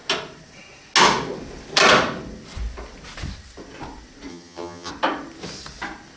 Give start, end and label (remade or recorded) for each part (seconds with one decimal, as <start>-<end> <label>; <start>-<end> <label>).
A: 0.0-4.3 recorded; 4.3-4.9 remade; 4.9-6.2 recorded